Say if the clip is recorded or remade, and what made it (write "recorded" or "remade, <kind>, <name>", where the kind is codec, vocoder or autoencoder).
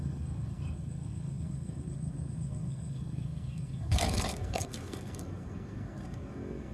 remade, codec, SNAC